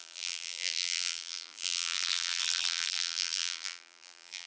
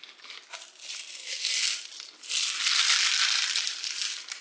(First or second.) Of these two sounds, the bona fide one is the second